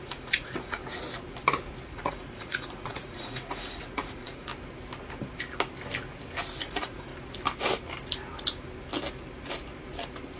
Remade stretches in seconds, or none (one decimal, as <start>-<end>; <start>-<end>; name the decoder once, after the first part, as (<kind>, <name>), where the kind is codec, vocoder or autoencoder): 0.0-0.8 (vocoder, Vocos); 1.9-4.5; 6.6-7.1